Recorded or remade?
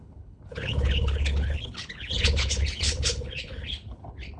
remade